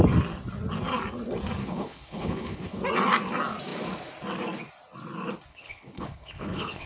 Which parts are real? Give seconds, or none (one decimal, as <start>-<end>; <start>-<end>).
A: 0.0-1.6; 2.8-5.5